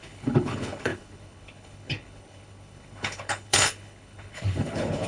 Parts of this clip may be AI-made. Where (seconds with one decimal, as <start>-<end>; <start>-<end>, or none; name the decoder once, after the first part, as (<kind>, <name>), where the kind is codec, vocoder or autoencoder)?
0.0-5.1 (codec, HILCodec)

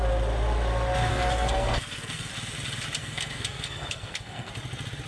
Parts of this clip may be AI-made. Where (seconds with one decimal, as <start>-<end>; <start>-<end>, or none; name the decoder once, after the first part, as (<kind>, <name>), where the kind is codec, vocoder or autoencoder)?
1.1-2.3 (codec, SNAC); 3.0-4.5

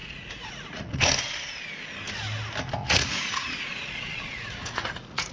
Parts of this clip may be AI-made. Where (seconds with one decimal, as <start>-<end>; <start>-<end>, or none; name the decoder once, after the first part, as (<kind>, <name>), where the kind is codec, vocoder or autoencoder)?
0.0-1.0 (vocoder, Vocos); 2.8-5.3

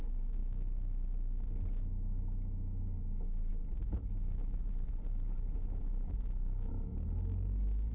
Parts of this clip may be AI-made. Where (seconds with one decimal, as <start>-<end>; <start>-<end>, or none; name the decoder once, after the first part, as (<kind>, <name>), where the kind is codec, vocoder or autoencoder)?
3.5-6.7 (vocoder, BigVGAN v2)

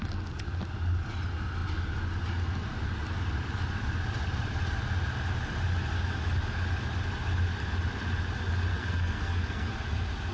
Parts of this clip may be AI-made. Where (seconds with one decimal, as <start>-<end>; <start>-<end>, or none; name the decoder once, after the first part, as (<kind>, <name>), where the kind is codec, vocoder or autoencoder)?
8.7-9.7 (codec, SNAC)

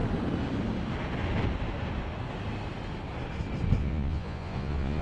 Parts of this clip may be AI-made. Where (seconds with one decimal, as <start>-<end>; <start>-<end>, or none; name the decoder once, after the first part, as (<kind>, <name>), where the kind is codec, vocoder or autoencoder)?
3.8-5.0 (vocoder, Vocos)

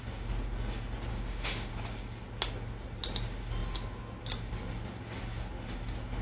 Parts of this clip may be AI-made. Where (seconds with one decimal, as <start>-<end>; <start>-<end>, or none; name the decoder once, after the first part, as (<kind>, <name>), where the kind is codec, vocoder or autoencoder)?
1.1-1.7 (autoencoder, DAC-VAE)

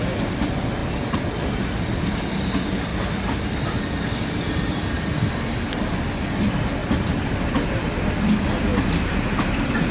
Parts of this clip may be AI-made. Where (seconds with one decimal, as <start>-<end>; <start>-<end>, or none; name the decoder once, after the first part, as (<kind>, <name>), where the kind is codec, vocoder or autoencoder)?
2.9-5.3 (vocoder, BigVGAN v2); 6.8-8.1; 8.7-9.9